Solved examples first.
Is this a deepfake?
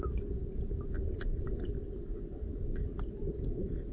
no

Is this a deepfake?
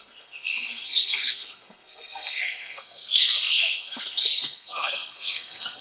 yes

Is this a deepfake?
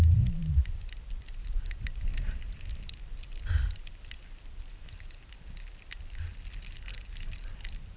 no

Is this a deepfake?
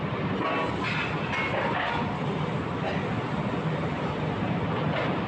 no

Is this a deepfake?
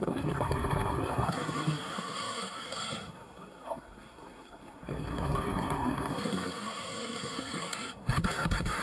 yes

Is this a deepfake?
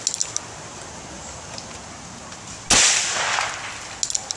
no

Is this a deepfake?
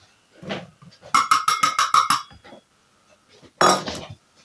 no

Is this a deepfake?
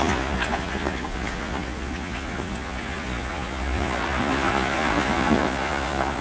yes